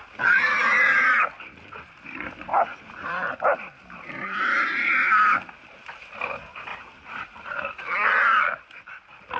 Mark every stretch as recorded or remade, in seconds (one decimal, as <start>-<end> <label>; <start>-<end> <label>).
0.0-0.7 recorded; 0.7-1.7 remade; 1.7-2.5 recorded; 2.5-4.9 remade; 4.9-6.7 recorded; 6.7-8.1 remade; 8.1-9.4 recorded